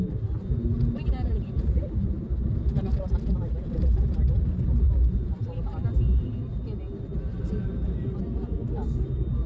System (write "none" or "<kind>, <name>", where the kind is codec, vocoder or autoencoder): none